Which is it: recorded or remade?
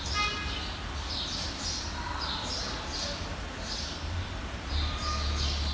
recorded